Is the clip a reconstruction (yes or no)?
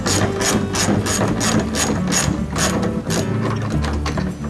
no